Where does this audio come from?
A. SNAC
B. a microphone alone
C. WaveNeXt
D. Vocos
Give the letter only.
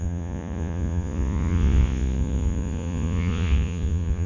D